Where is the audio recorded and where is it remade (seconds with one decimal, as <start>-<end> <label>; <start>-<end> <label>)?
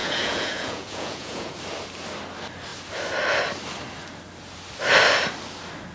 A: 0.0-1.5 remade; 1.5-5.9 recorded